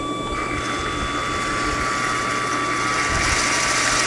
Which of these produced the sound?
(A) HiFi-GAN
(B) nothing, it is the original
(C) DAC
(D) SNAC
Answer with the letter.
B